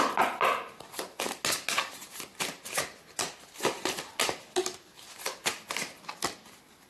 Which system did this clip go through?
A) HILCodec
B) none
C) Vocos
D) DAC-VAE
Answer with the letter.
B